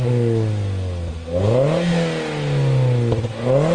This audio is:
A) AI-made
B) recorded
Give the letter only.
B